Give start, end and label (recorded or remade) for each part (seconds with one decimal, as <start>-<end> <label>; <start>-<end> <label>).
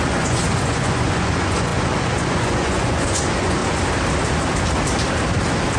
0.0-3.6 remade; 3.6-5.8 recorded